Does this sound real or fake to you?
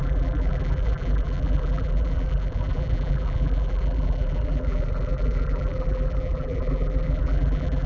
fake